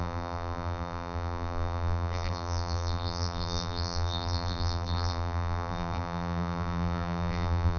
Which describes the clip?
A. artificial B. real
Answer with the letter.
A